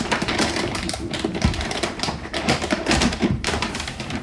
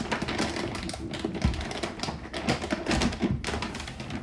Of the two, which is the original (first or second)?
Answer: second